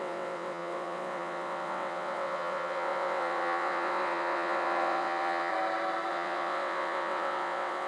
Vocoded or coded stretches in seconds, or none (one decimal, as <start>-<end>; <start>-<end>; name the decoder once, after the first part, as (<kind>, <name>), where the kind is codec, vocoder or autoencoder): 0.0-5.5 (vocoder, WaveNeXt); 6.1-7.9